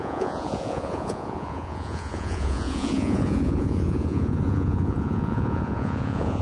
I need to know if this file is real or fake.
fake